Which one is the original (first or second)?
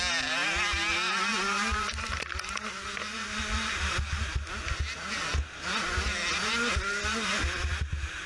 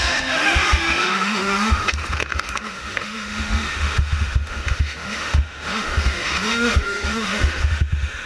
first